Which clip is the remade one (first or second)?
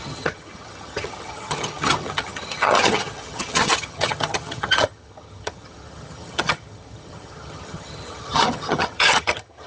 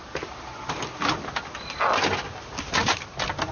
first